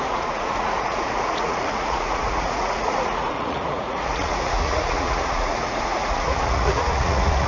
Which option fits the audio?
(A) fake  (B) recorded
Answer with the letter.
A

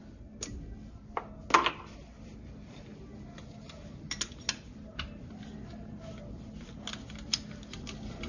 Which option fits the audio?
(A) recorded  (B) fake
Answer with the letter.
A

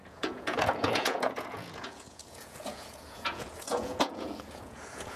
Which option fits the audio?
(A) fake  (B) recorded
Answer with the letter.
A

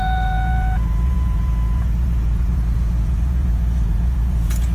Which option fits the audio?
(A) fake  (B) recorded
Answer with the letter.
A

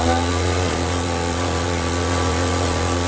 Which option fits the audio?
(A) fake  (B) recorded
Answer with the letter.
A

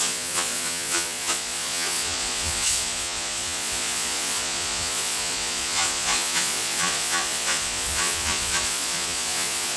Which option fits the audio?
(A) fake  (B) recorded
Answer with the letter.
A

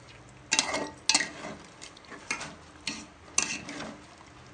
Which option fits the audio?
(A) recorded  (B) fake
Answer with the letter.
A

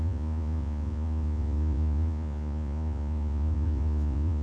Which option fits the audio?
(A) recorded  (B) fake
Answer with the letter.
B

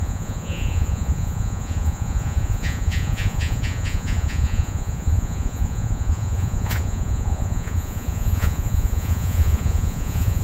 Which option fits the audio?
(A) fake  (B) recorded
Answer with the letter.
A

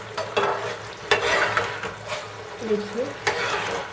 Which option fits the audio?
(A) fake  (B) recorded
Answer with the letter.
B